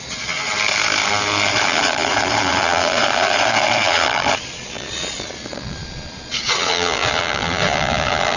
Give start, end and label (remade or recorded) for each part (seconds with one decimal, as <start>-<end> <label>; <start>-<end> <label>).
0.0-0.5 remade; 0.5-1.5 recorded; 1.5-8.4 remade

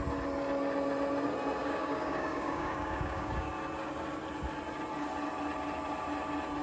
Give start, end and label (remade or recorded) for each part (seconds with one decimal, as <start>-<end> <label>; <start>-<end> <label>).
0.0-1.6 recorded; 1.6-3.5 remade; 3.5-6.6 recorded

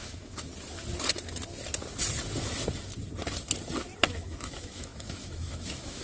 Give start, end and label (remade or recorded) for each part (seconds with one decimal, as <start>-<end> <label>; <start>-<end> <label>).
0.0-0.5 remade; 0.5-4.1 recorded; 4.1-6.0 remade

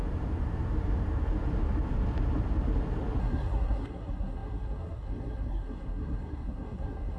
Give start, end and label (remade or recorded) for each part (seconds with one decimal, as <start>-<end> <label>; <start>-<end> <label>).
0.0-3.2 recorded; 3.2-7.2 remade

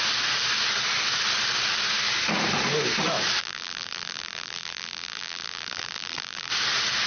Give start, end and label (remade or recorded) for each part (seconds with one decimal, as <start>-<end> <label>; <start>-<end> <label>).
0.0-3.4 recorded; 3.4-6.5 remade; 6.5-7.1 recorded